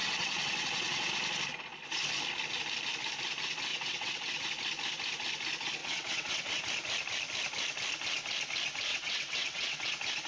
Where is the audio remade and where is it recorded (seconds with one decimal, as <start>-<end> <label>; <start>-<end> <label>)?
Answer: 0.0-1.1 remade; 1.1-3.7 recorded; 3.7-4.4 remade; 4.4-5.8 recorded; 5.8-6.6 remade; 6.6-8.9 recorded; 8.9-9.9 remade; 9.9-10.3 recorded